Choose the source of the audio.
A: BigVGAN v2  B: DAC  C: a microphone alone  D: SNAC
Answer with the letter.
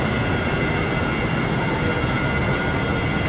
C